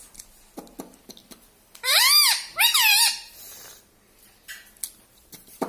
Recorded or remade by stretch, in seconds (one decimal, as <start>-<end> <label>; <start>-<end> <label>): 0.0-1.2 recorded; 1.2-2.0 remade; 2.0-2.5 recorded; 2.5-3.1 remade; 3.1-5.7 recorded